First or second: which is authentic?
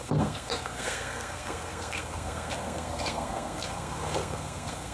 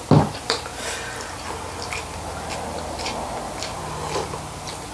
second